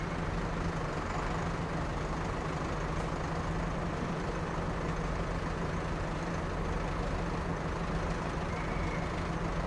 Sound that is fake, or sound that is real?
real